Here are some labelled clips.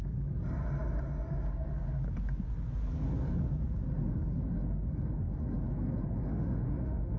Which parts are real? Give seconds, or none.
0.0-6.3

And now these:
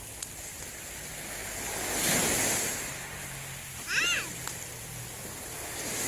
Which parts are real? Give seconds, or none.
0.0-6.1

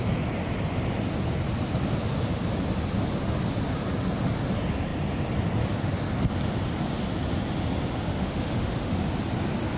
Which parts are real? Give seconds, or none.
0.0-8.1; 9.1-9.8

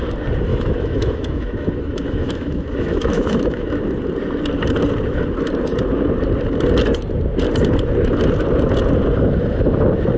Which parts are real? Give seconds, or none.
0.0-0.5; 3.8-10.2

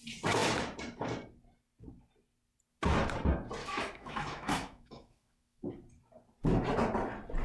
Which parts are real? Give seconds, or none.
0.0-3.6; 5.7-7.4

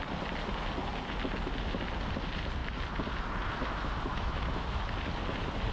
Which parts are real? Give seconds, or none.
0.0-4.1; 4.8-5.7

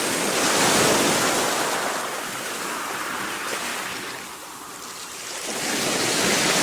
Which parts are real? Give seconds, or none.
0.0-6.6